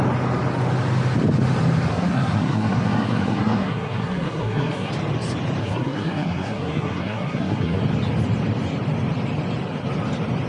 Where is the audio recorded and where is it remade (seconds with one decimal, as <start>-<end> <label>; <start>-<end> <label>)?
0.0-1.9 recorded; 1.9-4.9 remade; 4.9-5.6 recorded; 5.6-7.8 remade; 7.8-10.5 recorded